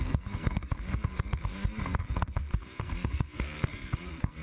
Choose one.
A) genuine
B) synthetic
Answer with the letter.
B